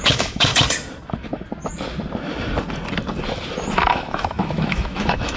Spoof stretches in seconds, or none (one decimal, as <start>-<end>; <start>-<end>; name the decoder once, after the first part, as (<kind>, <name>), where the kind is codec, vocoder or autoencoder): 0.0-0.5 (autoencoder, DAC-VAE); 3.7-5.4